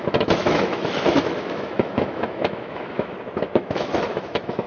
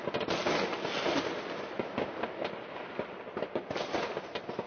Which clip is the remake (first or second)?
first